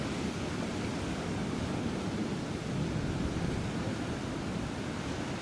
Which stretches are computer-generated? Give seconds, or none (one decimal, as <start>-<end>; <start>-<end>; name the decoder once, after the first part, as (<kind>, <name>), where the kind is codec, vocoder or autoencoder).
none